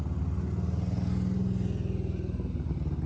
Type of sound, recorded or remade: recorded